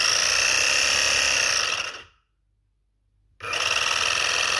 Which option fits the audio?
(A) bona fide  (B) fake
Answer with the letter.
A